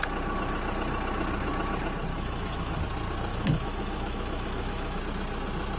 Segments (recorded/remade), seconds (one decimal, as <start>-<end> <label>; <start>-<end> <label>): 0.0-2.1 recorded; 2.1-2.8 remade; 2.8-3.3 recorded; 3.3-5.0 remade; 5.0-5.8 recorded